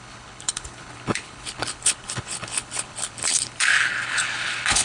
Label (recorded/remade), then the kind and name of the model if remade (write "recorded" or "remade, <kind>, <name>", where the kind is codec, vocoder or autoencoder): remade, codec, HILCodec